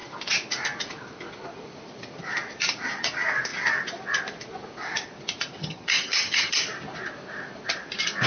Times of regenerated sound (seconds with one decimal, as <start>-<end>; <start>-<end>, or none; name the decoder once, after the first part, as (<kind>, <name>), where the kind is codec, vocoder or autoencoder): 5.6-6.6 (vocoder, HiFi-GAN)